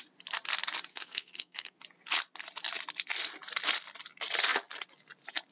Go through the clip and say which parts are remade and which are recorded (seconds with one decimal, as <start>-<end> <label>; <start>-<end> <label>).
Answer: 0.0-0.9 recorded; 0.9-1.8 remade; 1.8-5.5 recorded